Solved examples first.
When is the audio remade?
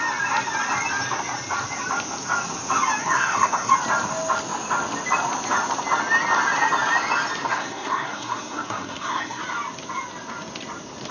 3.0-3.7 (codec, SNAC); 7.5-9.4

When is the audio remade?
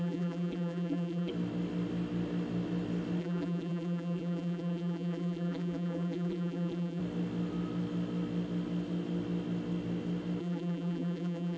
0.0-1.3 (vocoder, BigVGAN v2); 3.2-7.0; 10.4-11.6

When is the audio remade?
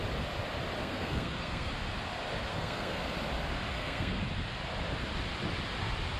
0.8-1.7 (codec, SNAC); 2.5-3.0; 3.7-4.2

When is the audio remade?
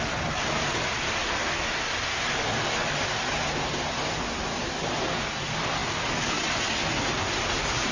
none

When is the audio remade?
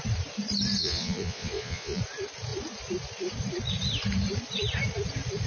0.8-2.0 (vocoder, Vocos)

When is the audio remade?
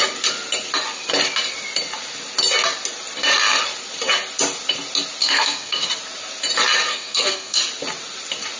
5.2-5.9 (codec, SNAC); 6.9-7.6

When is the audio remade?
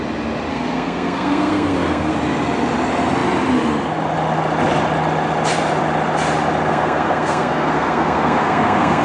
0.5-2.1 (codec, SNAC); 6.7-9.0